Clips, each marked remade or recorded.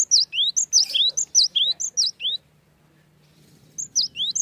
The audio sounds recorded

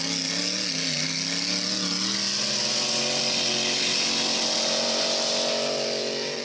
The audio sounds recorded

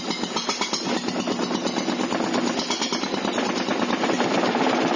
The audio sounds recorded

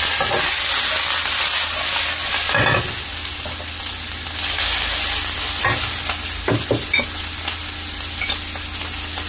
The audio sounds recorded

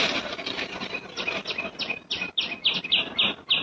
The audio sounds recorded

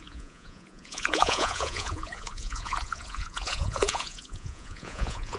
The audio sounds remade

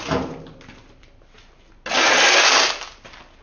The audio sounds recorded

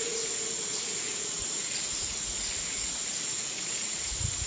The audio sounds remade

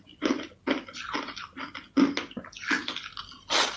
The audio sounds recorded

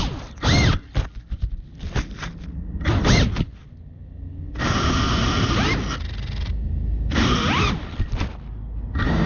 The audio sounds recorded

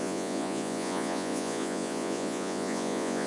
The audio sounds remade